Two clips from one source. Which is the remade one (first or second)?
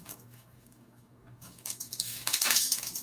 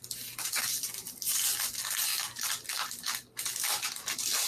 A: first